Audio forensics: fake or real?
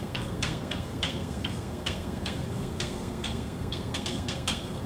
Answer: fake